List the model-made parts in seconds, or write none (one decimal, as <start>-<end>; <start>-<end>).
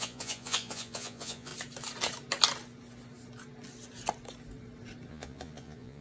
0.0-1.5; 5.1-6.0